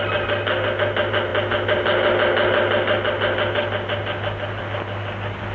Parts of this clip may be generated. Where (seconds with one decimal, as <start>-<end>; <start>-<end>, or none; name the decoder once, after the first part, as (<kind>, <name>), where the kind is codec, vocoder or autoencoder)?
none